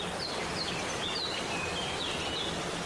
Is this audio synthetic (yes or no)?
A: no